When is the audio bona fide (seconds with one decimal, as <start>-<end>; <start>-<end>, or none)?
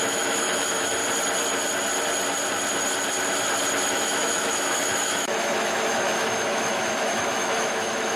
1.0-3.9